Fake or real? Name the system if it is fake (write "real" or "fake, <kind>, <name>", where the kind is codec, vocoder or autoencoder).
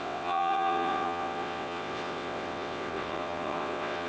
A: fake, vocoder, WaveNeXt